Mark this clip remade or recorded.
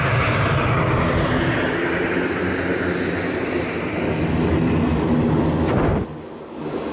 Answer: recorded